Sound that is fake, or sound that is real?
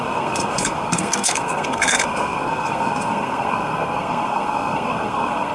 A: fake